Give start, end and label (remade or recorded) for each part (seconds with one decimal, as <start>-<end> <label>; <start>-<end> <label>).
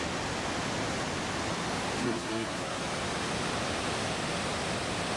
0.0-2.0 recorded; 2.0-2.8 remade; 2.8-5.2 recorded